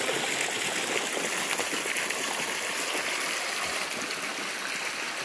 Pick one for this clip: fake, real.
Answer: real